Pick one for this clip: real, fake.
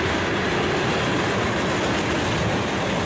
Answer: real